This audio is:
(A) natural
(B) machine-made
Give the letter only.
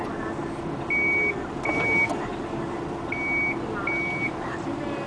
A